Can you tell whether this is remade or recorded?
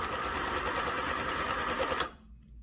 recorded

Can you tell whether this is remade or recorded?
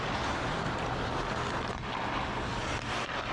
recorded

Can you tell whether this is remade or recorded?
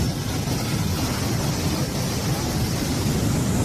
recorded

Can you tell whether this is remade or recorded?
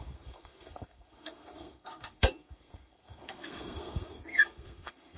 remade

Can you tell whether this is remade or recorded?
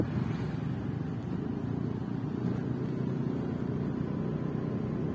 recorded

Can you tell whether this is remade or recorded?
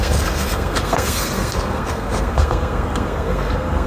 remade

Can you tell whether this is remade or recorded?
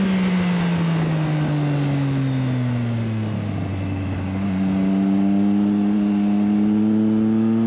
recorded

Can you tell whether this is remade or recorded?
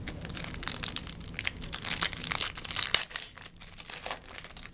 recorded